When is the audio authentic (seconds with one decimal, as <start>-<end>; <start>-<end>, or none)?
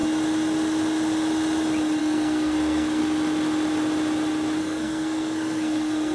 0.0-2.0; 3.0-4.6